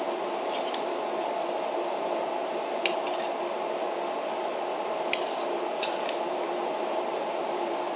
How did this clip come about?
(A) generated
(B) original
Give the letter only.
B